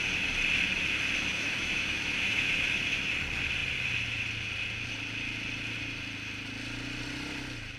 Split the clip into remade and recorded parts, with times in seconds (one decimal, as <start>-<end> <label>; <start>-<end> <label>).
0.0-1.3 recorded; 1.3-3.1 remade; 3.1-7.8 recorded